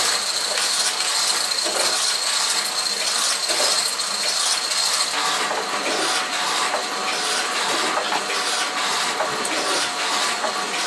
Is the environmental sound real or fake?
real